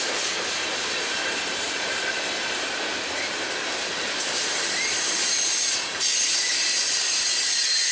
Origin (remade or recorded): remade